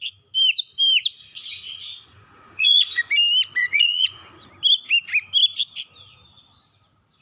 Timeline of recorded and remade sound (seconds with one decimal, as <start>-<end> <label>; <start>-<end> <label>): 0.0-1.2 recorded; 1.2-3.0 remade; 3.0-3.6 recorded; 3.6-4.5 remade; 4.5-7.2 recorded

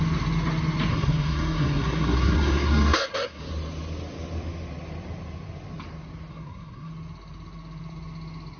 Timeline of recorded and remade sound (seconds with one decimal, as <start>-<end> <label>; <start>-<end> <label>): 0.0-0.9 recorded; 0.9-3.4 remade; 3.4-6.3 recorded; 6.3-6.9 remade; 6.9-8.6 recorded

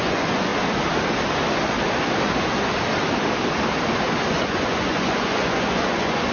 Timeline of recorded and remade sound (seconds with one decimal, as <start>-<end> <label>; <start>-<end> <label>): 0.0-0.5 remade; 0.5-4.3 recorded; 4.3-6.3 remade

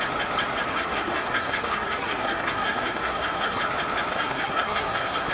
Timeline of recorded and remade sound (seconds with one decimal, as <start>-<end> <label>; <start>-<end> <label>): 0.0-0.7 recorded; 0.7-3.6 remade; 3.6-4.1 recorded; 4.1-5.3 remade

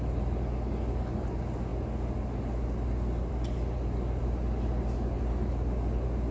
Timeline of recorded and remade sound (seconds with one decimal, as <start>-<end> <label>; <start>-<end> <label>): 0.0-6.3 recorded

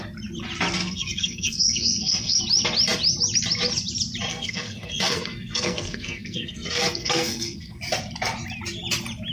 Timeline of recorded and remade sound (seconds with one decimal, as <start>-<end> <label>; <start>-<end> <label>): 0.0-0.8 recorded; 0.8-2.4 remade; 2.4-4.3 recorded; 4.3-7.8 remade; 7.8-9.3 recorded

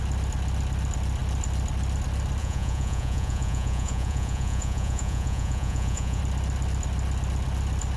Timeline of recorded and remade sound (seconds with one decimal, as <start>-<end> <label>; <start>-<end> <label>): 0.0-2.4 recorded; 2.4-6.2 remade; 6.2-8.0 recorded

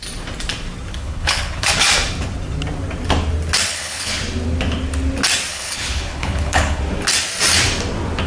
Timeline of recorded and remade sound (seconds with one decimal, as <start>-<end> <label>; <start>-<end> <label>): 0.0-0.9 recorded; 0.9-1.7 remade; 1.7-3.7 recorded; 3.7-4.2 remade; 4.2-5.5 recorded; 5.5-6.8 remade; 6.8-8.3 recorded